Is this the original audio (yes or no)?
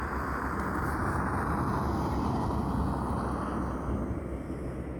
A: yes